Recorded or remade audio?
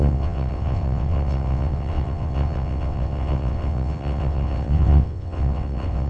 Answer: remade